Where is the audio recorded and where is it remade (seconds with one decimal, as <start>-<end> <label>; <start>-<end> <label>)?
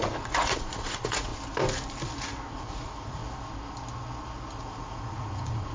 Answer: 0.0-1.3 remade; 1.3-2.5 recorded; 2.5-3.2 remade; 3.2-4.6 recorded; 4.6-5.7 remade